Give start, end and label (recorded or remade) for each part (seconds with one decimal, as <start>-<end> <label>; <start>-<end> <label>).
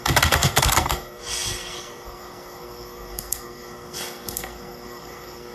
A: 0.0-5.5 remade